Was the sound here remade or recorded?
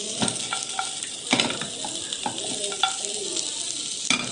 recorded